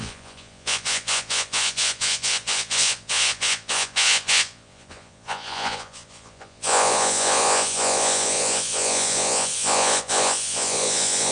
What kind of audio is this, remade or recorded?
remade